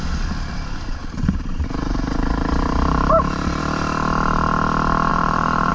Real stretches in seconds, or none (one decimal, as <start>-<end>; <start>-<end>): 0.0-1.0; 3.6-5.1